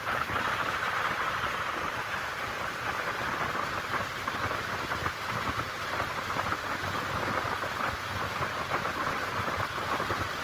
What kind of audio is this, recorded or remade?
recorded